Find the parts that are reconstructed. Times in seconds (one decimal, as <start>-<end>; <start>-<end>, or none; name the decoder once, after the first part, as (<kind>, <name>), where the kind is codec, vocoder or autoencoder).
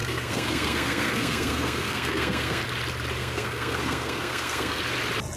0.0-2.6 (codec, SNAC); 3.2-4.8